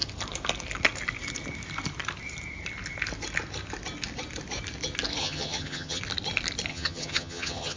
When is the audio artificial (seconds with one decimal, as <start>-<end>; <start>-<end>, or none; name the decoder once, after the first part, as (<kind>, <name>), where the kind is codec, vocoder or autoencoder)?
5.2-6.0 (vocoder, HiFi-GAN); 6.7-7.8